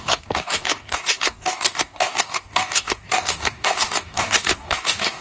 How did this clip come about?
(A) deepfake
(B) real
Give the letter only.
A